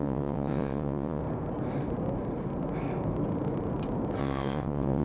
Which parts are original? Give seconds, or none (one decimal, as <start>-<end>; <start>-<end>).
1.2-4.2